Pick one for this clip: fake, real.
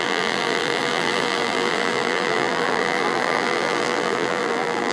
fake